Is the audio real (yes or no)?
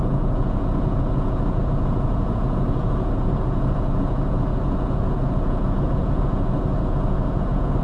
no